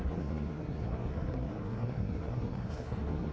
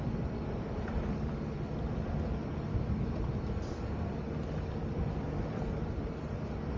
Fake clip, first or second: first